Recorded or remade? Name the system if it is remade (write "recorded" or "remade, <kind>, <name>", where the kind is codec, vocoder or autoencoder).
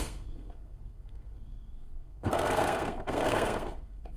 remade, codec, SNAC